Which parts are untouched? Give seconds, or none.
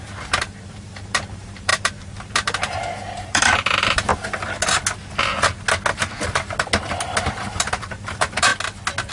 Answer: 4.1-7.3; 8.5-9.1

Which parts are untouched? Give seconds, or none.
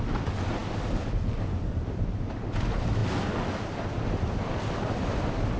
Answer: 0.0-5.6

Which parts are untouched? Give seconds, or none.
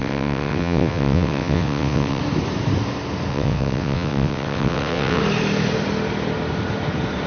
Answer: 2.2-3.3; 5.2-7.3